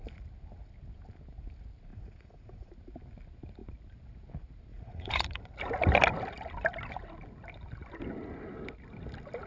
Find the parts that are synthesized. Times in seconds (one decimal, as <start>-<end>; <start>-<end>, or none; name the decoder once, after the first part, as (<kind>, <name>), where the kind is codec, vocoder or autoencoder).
1.9-2.7 (vocoder, Vocos); 4.7-5.5